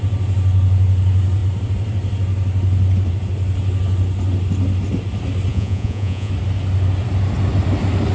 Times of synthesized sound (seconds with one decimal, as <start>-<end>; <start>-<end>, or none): 5.5-6.3